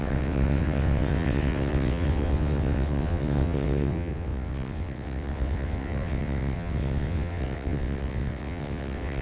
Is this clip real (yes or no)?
no